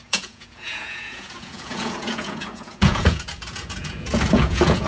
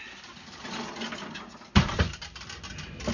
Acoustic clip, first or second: second